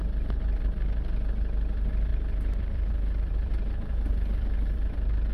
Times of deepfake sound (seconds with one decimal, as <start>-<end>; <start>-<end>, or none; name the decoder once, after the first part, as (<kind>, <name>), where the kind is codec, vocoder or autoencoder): 2.1-5.3 (vocoder, BigVGAN v2)

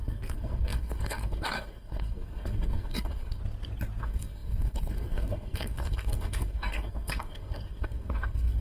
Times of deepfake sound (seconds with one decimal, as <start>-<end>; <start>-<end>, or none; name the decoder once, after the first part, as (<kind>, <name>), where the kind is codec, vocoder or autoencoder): 0.0-3.4 (codec, SNAC); 4.0-8.6

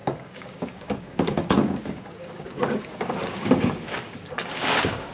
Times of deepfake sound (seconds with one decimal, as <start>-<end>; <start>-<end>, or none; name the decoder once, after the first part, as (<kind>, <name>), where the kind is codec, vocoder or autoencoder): 0.0-5.1 (codec, DAC)

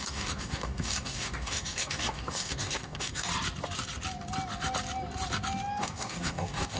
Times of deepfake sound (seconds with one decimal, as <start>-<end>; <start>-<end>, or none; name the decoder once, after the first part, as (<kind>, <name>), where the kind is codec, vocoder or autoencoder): 0.0-3.3 (codec, DAC); 5.8-6.8

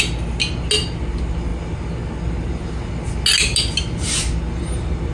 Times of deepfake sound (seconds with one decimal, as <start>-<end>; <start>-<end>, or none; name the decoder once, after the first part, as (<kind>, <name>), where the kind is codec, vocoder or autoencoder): none

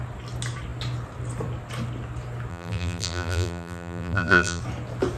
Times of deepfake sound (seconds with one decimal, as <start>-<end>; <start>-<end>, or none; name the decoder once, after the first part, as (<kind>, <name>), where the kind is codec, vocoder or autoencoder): 2.5-4.6 (vocoder, BigVGAN v2)